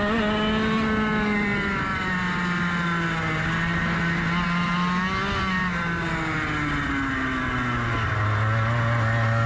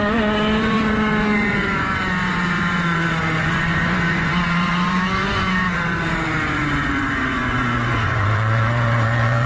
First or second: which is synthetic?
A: second